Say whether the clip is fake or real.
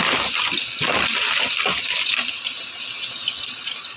real